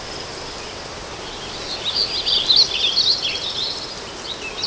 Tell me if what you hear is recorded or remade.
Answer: recorded